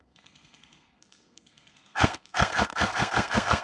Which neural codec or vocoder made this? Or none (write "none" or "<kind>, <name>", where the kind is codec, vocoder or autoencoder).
codec, SNAC